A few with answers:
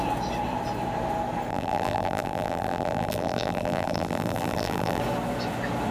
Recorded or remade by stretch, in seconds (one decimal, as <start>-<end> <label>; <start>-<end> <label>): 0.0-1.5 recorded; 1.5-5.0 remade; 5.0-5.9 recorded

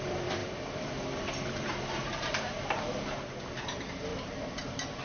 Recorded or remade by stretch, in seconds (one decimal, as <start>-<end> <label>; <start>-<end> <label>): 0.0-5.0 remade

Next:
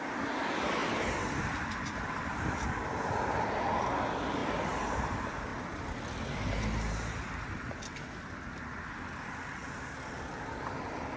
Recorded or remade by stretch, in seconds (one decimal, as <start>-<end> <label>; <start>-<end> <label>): 0.0-5.5 remade; 5.5-8.9 recorded; 8.9-9.6 remade; 9.6-10.5 recorded; 10.5-11.2 remade

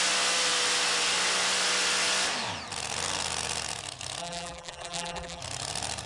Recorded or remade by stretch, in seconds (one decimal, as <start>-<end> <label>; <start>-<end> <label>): 0.0-4.2 recorded; 4.2-5.4 remade; 5.4-6.1 recorded

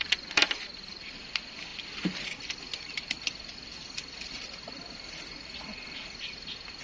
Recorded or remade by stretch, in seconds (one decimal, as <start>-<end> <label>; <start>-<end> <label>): 0.0-0.4 remade; 0.4-0.9 recorded; 0.9-6.8 remade

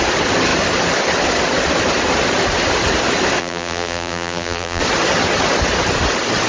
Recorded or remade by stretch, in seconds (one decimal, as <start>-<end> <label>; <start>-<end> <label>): 0.0-3.4 recorded; 3.4-4.8 remade; 4.8-6.5 recorded